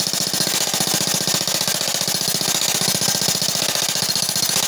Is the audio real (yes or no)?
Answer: yes